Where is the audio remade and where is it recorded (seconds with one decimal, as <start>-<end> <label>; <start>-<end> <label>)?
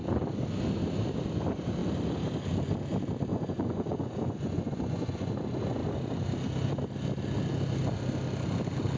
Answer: 0.0-3.3 recorded; 3.3-5.3 remade; 5.3-9.0 recorded